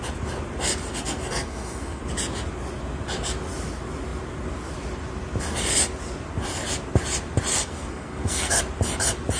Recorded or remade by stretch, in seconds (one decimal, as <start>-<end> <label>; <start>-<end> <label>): 0.0-0.9 recorded; 0.9-2.0 remade; 2.0-7.5 recorded; 7.5-8.6 remade; 8.6-9.4 recorded